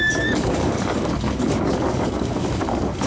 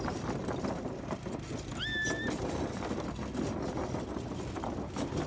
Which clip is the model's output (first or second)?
first